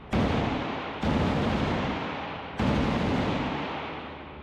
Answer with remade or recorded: remade